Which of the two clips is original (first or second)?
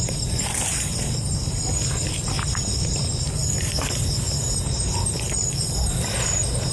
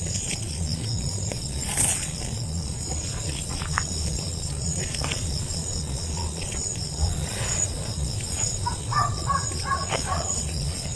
first